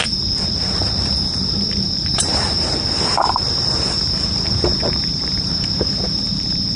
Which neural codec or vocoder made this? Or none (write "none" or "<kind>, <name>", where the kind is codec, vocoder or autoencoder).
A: vocoder, BigVGAN v2